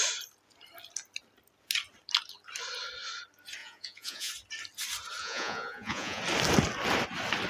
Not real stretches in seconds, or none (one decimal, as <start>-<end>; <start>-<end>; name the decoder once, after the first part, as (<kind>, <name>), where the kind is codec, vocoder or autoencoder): 3.6-4.3 (vocoder, Vocos); 5.2-6.2